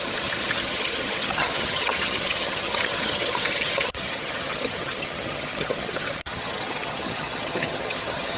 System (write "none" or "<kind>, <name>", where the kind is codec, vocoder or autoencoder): vocoder, HiFi-GAN